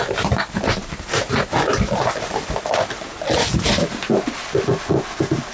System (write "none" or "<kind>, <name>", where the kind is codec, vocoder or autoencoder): none